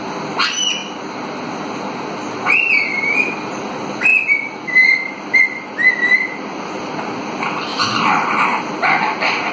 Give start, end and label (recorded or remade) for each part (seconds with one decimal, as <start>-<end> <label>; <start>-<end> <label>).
0.0-7.7 recorded; 7.7-8.7 remade; 8.7-9.5 recorded